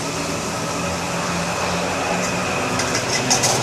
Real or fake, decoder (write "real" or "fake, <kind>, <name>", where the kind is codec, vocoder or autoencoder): real